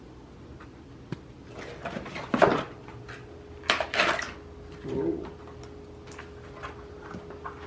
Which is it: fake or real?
real